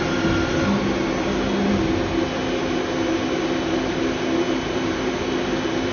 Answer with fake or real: real